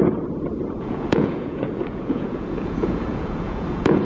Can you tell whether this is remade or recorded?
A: remade